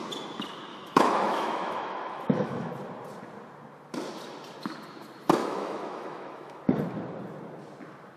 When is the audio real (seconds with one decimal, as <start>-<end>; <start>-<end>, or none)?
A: 0.0-0.7; 2.7-5.4; 6.6-8.2